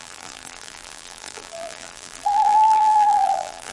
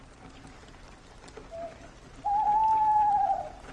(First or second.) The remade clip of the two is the first